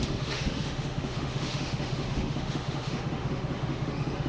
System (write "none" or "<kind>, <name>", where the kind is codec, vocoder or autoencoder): autoencoder, DAC-VAE